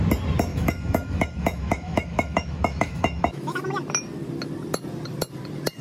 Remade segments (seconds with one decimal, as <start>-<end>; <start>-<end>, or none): 0.5-3.6